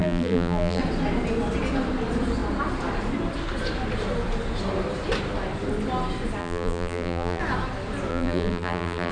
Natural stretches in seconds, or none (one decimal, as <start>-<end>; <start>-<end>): 0.8-6.4; 7.4-8.1